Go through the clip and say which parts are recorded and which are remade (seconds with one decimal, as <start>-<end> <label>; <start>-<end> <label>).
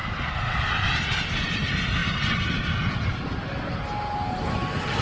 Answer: 0.0-1.6 remade; 1.6-5.0 recorded